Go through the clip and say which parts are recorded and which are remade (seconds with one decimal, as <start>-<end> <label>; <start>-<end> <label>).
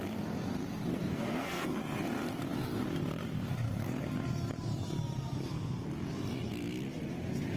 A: 0.0-0.9 recorded; 0.9-1.8 remade; 1.8-7.6 recorded